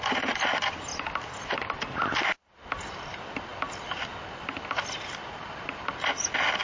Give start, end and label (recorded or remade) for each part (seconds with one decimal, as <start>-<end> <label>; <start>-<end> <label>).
0.0-6.6 recorded